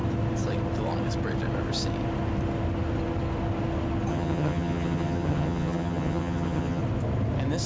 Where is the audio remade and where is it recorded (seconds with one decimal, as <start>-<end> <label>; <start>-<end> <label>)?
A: 0.0-4.1 recorded; 4.1-6.8 remade; 6.8-7.7 recorded